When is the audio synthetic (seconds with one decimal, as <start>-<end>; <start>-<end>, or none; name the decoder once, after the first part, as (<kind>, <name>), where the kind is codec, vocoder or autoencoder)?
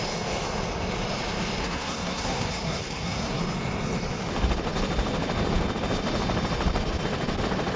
1.6-3.4 (codec, SNAC)